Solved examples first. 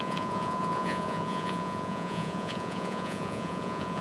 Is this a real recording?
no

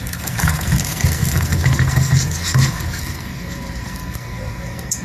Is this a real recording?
no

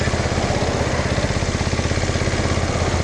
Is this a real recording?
yes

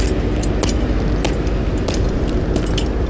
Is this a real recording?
yes